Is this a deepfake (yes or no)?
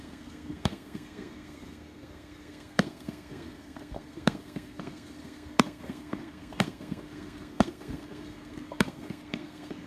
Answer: yes